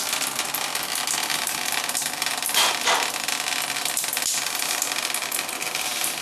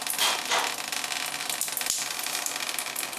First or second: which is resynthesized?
first